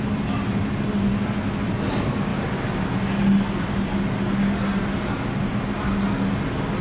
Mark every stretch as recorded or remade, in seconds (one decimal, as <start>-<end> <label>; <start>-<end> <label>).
0.0-6.8 recorded